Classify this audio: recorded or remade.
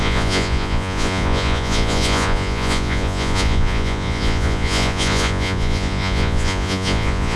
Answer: remade